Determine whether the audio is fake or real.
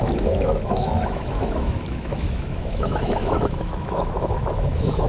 fake